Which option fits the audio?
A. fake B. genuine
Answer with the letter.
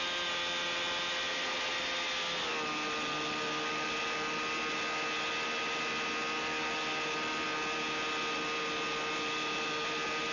B